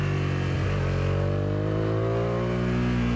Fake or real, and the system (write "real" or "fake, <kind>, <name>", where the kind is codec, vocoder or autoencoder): real